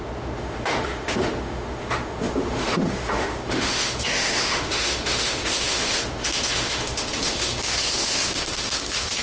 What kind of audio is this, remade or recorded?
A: remade